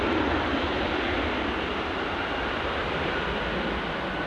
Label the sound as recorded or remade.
recorded